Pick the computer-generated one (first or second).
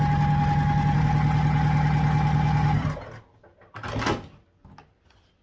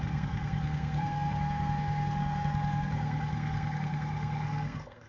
second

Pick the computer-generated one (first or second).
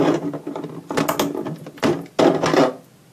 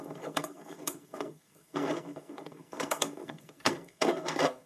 second